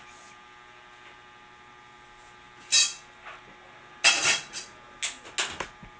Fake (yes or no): no